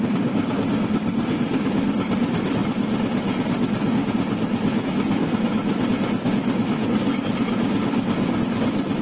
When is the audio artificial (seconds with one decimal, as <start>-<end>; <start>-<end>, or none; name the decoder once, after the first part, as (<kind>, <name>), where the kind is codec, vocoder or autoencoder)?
none

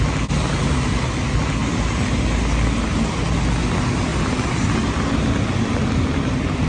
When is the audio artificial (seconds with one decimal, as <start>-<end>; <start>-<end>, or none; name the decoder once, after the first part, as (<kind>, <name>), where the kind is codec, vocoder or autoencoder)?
none

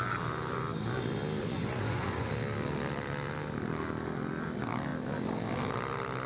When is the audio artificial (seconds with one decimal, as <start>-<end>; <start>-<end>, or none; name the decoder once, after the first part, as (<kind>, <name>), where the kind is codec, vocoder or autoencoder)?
1.4-2.3 (vocoder, Vocos)

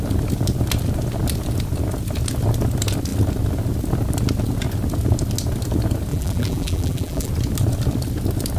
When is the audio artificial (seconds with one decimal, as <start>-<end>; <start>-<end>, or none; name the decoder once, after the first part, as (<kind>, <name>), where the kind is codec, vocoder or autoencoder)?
6.1-7.3 (vocoder, BigVGAN v2)

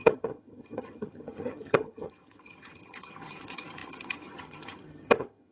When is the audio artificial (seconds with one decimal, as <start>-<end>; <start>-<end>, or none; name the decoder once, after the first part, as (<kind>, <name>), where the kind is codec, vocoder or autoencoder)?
0.0-5.5 (vocoder, HiFi-GAN)